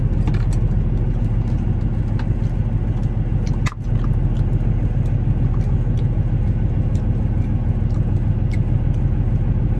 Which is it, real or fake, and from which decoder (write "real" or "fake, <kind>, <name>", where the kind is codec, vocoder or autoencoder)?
real